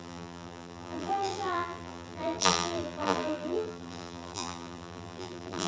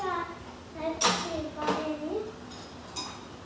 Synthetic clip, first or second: first